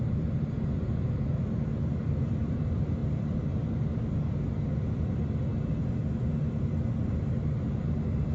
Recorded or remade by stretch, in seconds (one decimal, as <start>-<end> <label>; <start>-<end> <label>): 0.0-8.3 recorded